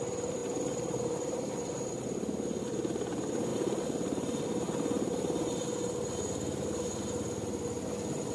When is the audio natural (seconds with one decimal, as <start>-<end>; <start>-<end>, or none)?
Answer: 0.0-8.3